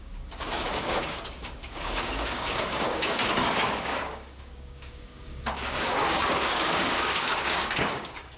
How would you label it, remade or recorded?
remade